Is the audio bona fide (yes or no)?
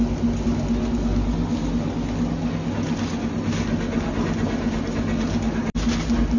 yes